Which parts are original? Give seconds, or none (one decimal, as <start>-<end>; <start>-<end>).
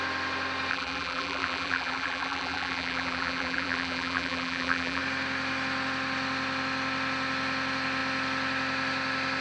0.0-0.7; 5.0-9.4